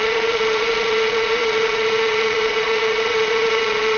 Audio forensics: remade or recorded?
remade